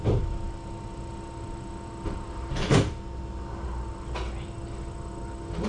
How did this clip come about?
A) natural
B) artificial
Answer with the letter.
A